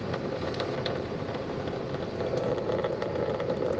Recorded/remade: remade